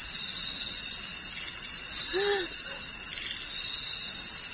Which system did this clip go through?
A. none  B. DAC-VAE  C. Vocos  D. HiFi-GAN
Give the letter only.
A